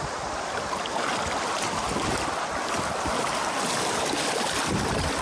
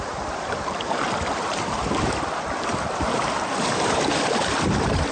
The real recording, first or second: first